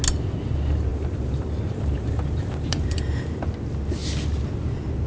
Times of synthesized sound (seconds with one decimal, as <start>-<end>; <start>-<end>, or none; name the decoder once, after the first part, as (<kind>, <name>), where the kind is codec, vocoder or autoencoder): 0.9-3.4 (vocoder, BigVGAN v2)